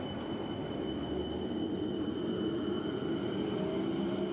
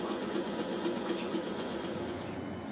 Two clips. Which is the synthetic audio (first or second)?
second